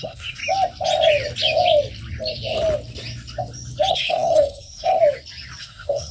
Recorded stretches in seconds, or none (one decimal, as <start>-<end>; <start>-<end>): 0.4-3.9; 5.0-5.6